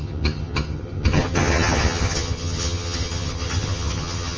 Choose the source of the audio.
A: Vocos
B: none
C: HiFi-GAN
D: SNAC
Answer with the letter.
C